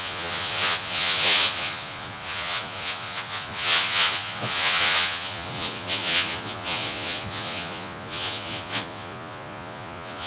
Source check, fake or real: fake